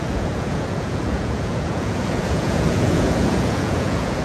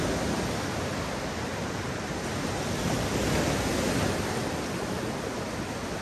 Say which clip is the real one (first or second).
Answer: second